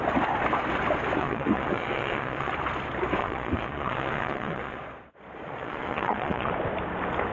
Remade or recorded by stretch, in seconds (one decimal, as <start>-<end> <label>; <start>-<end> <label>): 0.0-1.2 recorded; 1.2-2.5 remade; 2.5-3.2 recorded; 3.2-6.5 remade; 6.5-7.3 recorded